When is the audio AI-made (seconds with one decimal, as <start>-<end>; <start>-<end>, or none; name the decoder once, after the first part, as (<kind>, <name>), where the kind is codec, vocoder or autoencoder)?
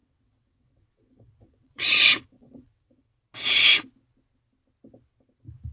0.0-3.2 (vocoder, WaveNeXt)